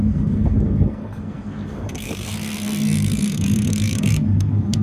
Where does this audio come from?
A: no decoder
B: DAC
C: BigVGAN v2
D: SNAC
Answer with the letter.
D